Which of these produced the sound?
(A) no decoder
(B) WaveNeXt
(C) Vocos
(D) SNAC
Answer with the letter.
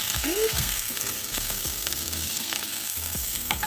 D